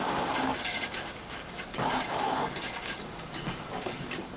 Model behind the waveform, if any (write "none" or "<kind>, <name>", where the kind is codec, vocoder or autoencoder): codec, DAC